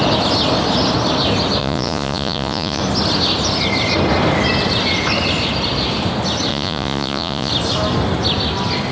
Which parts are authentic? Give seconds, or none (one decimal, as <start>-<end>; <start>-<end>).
0.0-1.6; 2.8-6.5; 7.5-8.9